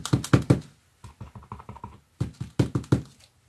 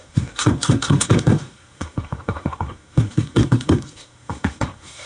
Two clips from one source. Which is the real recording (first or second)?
first